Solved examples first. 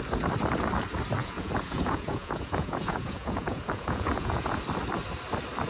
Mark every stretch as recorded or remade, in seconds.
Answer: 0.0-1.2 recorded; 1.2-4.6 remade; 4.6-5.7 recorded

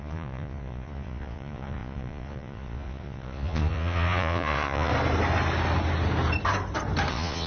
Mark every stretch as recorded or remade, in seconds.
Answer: 0.0-4.9 remade; 4.9-7.1 recorded; 7.1-7.5 remade